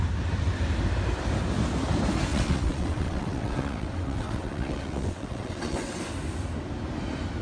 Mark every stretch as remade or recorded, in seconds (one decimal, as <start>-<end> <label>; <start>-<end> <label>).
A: 0.0-2.3 recorded; 2.3-6.0 remade; 6.0-7.4 recorded